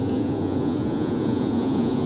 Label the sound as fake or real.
fake